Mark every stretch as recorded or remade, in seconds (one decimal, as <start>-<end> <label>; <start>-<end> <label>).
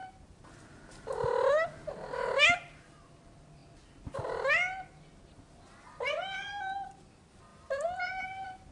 0.0-7.5 recorded; 7.5-8.7 remade